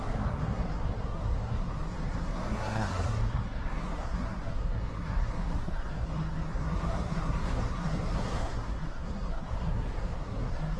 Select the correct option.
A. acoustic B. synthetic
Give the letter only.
B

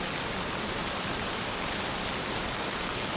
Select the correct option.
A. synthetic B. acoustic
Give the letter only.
B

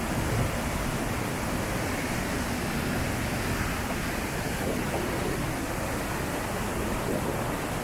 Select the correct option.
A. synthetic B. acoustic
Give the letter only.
B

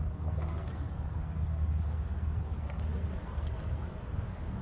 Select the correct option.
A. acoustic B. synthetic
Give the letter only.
B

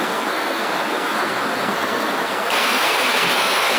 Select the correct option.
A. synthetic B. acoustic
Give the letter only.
A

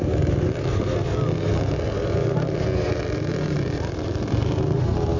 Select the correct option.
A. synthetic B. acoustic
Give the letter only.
B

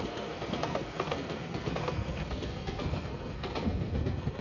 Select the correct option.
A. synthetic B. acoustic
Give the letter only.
A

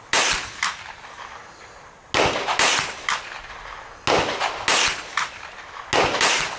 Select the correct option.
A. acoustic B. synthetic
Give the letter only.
A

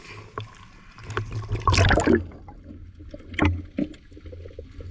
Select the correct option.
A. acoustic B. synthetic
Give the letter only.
A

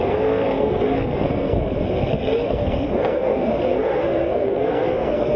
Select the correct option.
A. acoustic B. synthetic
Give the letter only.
B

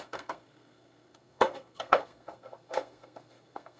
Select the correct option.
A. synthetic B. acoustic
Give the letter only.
A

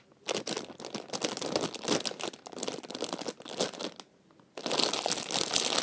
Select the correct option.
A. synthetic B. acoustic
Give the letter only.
B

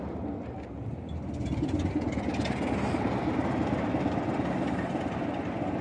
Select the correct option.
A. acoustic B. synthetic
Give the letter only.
A